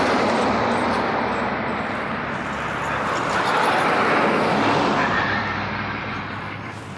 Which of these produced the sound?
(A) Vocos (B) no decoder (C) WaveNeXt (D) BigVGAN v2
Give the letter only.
D